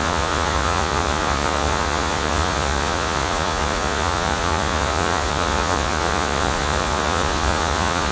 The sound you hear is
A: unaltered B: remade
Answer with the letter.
B